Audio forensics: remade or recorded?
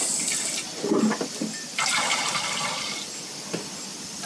recorded